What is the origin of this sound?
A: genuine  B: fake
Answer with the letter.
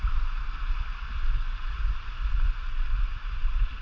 A